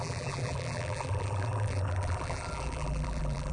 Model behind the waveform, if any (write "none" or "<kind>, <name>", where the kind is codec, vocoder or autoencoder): vocoder, BigVGAN v2